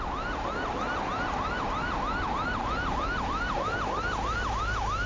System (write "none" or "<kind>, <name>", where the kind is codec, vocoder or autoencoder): none